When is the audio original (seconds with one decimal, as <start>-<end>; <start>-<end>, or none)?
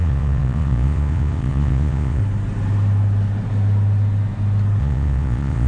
2.2-4.8